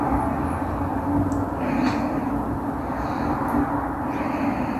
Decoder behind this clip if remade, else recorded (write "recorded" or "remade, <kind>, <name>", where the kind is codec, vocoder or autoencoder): recorded